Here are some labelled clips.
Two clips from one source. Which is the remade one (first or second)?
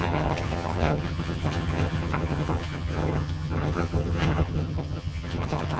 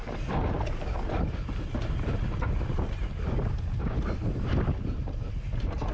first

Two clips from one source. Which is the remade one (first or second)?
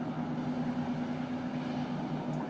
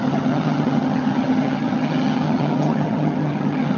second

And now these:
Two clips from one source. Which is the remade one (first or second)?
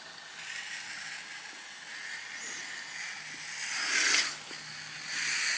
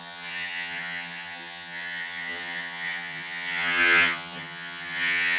second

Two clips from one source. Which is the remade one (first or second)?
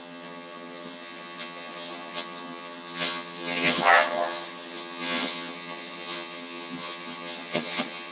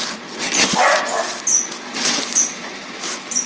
first